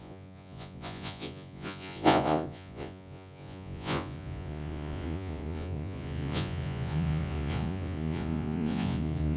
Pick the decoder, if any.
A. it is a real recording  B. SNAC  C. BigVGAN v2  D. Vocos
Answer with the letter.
D